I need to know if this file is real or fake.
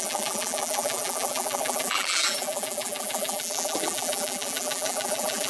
fake